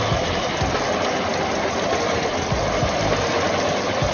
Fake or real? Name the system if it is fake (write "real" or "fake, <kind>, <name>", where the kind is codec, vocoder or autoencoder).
real